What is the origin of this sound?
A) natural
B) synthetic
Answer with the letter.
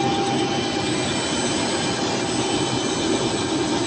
A